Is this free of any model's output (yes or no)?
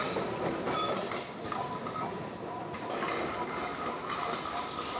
yes